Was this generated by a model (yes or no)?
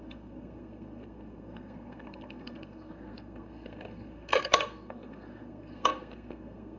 yes